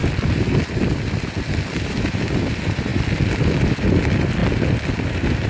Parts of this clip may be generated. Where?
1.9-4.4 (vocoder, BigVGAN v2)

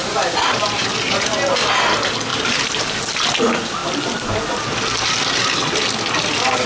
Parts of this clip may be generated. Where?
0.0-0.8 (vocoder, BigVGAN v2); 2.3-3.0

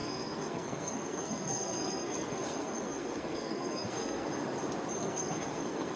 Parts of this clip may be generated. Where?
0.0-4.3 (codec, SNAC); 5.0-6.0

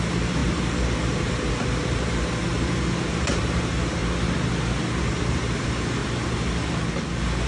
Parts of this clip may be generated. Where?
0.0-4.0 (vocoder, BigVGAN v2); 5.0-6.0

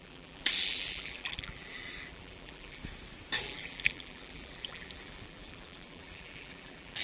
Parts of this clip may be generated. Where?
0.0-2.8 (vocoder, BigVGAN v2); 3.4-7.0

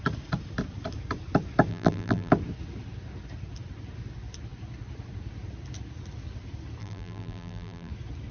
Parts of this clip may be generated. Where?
1.7-2.3 (vocoder, BigVGAN v2); 6.8-7.9

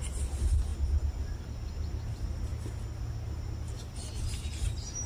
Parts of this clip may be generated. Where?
none

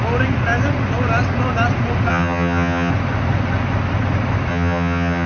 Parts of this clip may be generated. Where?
2.1-2.9 (vocoder, HiFi-GAN); 4.5-5.3